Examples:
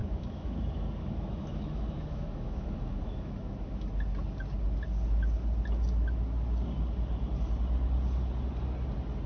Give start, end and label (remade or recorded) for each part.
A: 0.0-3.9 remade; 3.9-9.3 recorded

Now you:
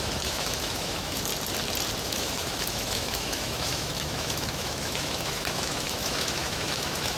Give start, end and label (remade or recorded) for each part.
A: 0.0-1.3 remade; 1.3-2.0 recorded; 2.0-7.2 remade